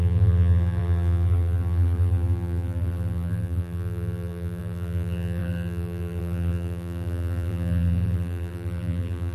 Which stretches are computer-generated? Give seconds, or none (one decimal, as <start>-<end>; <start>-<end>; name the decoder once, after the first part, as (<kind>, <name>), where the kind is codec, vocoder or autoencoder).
0.0-9.3 (vocoder, BigVGAN v2)